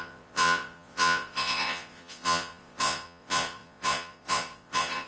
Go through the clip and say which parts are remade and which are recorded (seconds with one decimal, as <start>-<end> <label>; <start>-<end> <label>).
0.0-5.1 remade